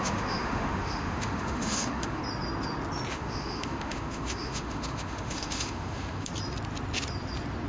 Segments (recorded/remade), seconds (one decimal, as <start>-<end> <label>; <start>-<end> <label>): 0.0-2.2 remade; 2.2-3.1 recorded; 3.1-6.3 remade; 6.3-7.7 recorded